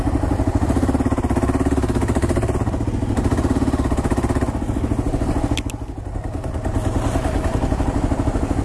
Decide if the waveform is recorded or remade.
recorded